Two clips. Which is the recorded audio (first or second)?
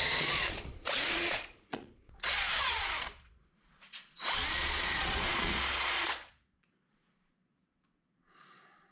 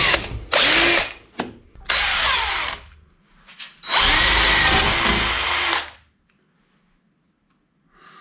second